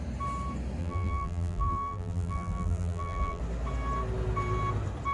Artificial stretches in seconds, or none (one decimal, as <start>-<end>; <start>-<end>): 0.8-3.4